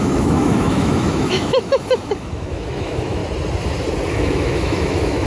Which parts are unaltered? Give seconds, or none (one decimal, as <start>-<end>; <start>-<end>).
3.2-4.1

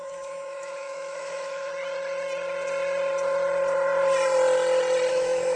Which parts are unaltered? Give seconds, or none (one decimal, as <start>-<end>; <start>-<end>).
1.7-5.1

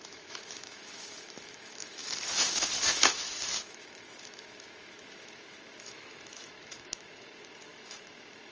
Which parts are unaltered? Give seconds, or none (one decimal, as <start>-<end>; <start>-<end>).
none